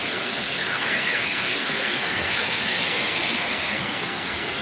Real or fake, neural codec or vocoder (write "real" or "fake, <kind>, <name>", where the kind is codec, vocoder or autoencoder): fake, codec, SNAC